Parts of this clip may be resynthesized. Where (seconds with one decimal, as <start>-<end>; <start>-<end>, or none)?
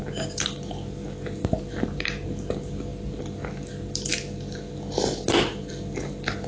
1.4-2.5